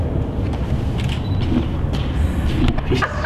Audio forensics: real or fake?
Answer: real